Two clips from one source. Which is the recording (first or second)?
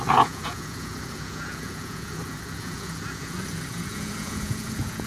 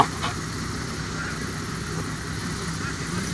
second